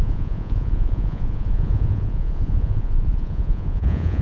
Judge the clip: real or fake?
fake